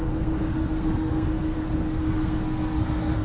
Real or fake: fake